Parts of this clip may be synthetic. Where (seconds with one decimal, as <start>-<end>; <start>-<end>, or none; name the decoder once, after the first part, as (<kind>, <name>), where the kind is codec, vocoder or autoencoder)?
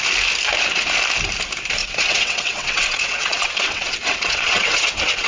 1.8-5.3 (vocoder, WaveNeXt)